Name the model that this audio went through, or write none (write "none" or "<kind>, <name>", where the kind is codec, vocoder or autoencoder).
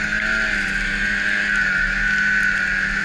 none